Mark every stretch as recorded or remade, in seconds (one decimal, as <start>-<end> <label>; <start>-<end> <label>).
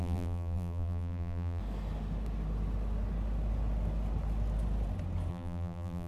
0.0-1.6 remade; 1.6-5.3 recorded; 5.3-6.1 remade